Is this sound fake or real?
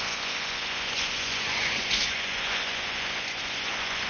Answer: fake